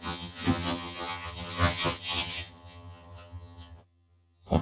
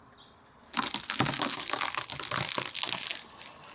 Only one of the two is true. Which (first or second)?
second